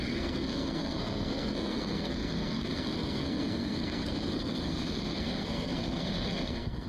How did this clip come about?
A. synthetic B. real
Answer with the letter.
A